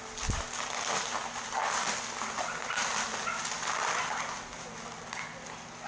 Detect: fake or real real